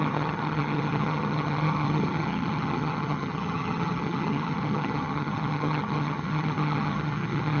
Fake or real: fake